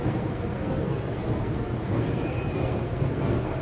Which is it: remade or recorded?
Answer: remade